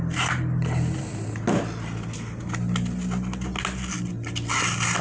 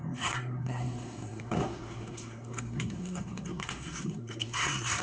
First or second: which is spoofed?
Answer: second